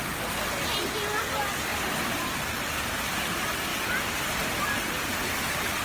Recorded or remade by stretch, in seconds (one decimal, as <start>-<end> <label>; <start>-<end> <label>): 0.0-3.7 recorded; 3.7-5.1 remade; 5.1-5.8 recorded